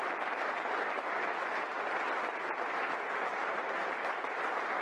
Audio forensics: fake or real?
real